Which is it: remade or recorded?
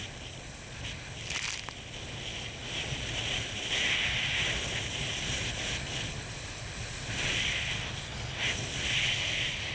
recorded